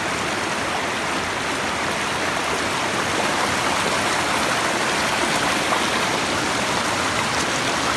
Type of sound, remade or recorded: recorded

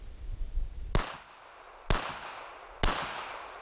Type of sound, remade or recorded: recorded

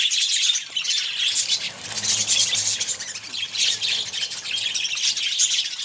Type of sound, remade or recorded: recorded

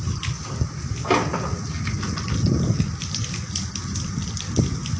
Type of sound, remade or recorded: recorded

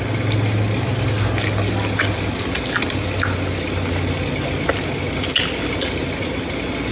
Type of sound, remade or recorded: recorded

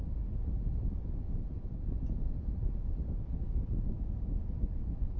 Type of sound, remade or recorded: recorded